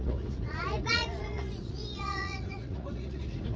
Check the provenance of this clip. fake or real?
fake